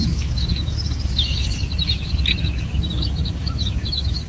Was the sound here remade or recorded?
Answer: remade